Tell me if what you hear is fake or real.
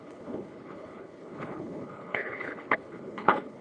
fake